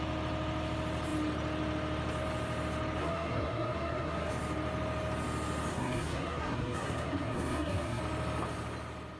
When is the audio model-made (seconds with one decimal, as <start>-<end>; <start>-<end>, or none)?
3.0-4.3; 5.7-8.0

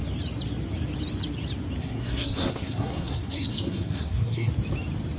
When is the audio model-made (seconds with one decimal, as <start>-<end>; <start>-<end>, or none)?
1.8-4.5

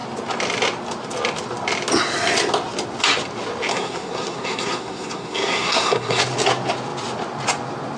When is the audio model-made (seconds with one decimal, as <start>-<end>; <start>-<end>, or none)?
3.7-6.2